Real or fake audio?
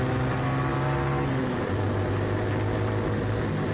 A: real